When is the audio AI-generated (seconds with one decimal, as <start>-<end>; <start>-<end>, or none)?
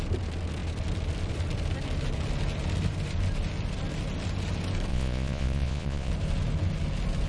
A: 4.9-6.1